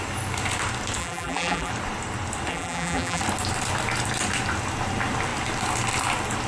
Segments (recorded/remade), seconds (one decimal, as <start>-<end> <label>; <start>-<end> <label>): 0.0-1.0 recorded; 1.0-1.7 remade; 1.7-2.5 recorded; 2.5-3.2 remade; 3.2-6.5 recorded